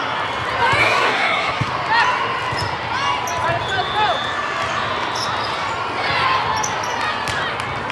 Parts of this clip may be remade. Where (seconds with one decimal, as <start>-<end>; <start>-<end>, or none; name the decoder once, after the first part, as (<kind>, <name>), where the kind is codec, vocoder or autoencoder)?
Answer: 0.8-1.7 (codec, SNAC)